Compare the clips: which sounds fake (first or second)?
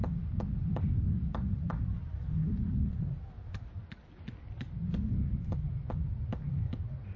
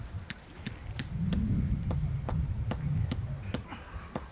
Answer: second